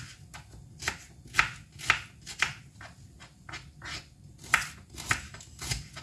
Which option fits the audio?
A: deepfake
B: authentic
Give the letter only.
B